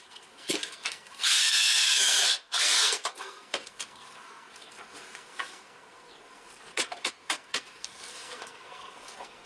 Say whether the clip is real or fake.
fake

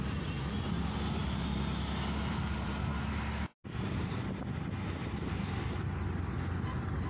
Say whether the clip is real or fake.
real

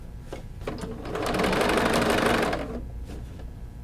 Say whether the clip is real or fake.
real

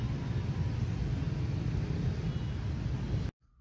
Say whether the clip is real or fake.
real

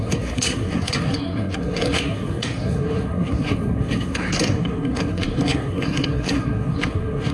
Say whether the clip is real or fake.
fake